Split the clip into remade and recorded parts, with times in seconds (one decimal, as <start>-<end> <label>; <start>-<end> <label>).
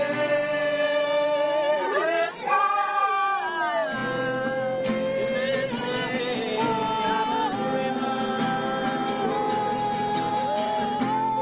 0.0-1.7 recorded; 1.7-3.1 remade; 3.1-11.4 recorded